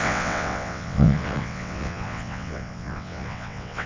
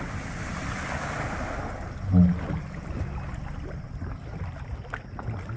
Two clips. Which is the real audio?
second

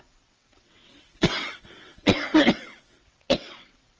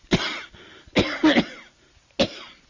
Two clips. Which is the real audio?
second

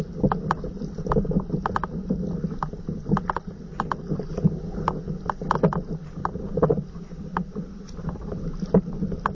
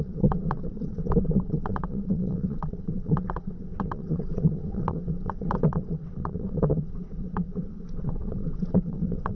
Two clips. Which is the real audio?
first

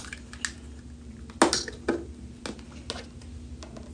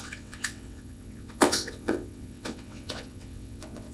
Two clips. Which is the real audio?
first